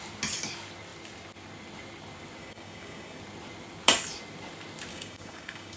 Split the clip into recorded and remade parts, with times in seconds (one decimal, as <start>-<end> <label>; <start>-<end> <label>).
0.0-2.4 recorded; 2.4-3.2 remade; 3.2-4.9 recorded; 4.9-5.8 remade